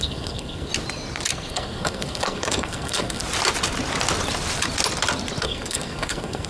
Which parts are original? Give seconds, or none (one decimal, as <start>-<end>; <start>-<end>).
0.7-1.3; 3.2-5.4